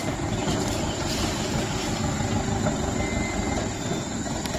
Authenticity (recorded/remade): recorded